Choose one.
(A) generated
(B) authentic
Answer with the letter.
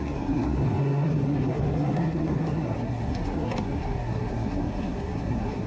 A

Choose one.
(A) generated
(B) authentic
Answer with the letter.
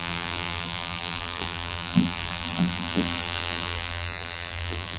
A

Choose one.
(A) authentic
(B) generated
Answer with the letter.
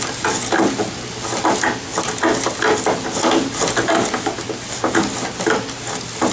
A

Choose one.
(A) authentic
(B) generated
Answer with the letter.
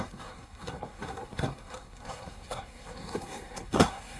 B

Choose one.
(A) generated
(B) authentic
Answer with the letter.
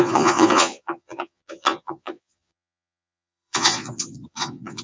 A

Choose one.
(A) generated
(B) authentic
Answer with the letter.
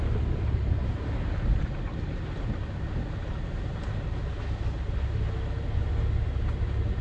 B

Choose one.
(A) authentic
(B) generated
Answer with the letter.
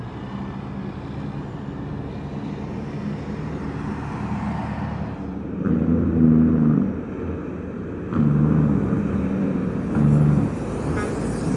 A